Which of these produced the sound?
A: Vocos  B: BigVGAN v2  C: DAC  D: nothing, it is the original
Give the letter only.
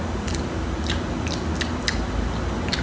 D